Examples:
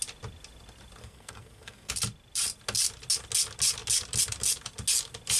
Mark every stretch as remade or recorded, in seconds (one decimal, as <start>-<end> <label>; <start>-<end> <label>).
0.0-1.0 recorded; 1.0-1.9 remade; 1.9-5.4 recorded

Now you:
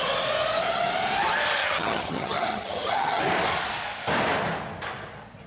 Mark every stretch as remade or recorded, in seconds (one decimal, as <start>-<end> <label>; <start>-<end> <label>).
0.0-1.6 recorded; 1.6-3.2 remade; 3.2-5.5 recorded

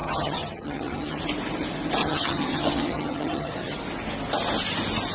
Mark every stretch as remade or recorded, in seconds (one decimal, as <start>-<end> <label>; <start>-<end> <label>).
0.0-1.2 remade; 1.2-2.0 recorded; 2.0-3.8 remade; 3.8-5.1 recorded